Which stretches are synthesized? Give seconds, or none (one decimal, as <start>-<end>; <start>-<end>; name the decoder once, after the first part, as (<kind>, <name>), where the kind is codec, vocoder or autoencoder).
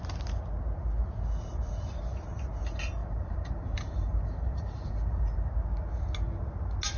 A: 3.0-5.5 (vocoder, BigVGAN v2)